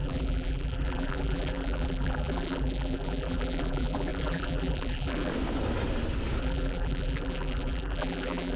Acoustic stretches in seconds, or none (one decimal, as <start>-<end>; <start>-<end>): 5.3-6.4